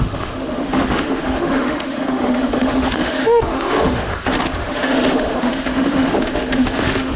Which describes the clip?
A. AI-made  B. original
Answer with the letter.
A